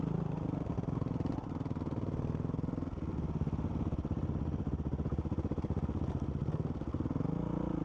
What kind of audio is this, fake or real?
real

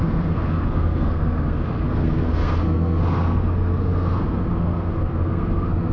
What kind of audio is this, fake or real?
fake